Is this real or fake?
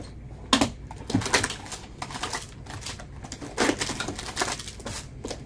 real